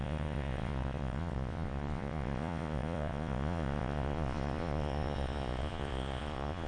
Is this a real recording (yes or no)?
no